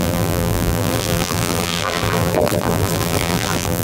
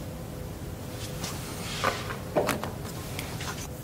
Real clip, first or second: second